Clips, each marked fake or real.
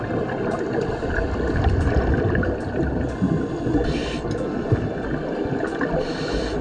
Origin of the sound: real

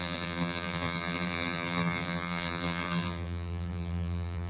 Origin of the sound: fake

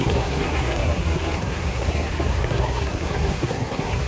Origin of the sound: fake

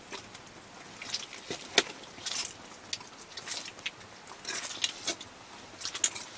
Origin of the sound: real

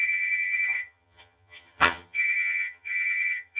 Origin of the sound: fake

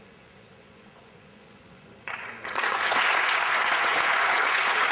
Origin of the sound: fake